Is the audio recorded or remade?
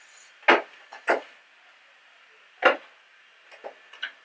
recorded